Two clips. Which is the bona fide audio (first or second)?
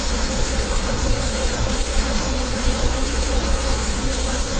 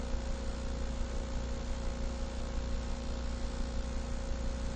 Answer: second